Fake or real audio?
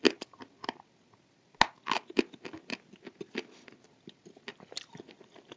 real